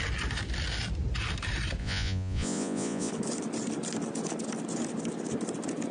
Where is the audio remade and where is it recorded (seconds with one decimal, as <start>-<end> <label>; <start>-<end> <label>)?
0.0-1.8 recorded; 1.8-3.1 remade; 3.1-5.9 recorded